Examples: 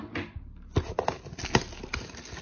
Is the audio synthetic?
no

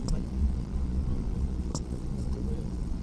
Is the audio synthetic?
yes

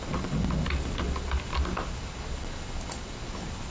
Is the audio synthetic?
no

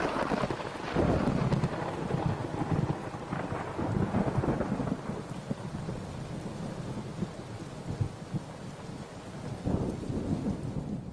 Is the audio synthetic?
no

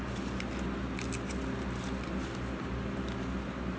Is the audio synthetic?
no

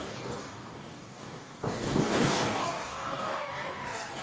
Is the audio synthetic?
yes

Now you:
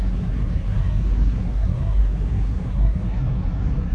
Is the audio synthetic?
yes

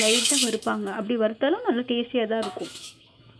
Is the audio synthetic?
yes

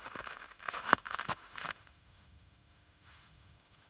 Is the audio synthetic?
yes